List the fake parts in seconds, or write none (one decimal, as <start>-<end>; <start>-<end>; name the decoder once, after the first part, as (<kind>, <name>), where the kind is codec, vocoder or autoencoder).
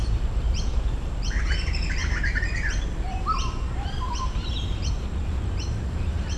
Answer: 0.0-6.4 (vocoder, BigVGAN v2)